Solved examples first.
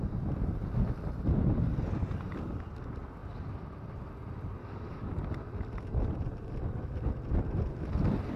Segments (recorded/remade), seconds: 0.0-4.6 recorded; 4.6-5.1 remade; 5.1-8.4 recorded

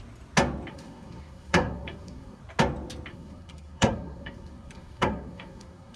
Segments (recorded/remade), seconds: 0.0-0.7 recorded; 0.7-2.4 remade; 2.4-3.1 recorded; 3.1-6.0 remade

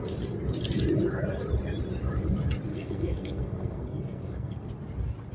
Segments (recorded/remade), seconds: 0.0-2.7 recorded; 2.7-4.7 remade; 4.7-5.3 recorded